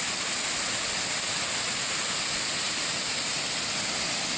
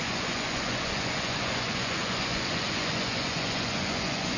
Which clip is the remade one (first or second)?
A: second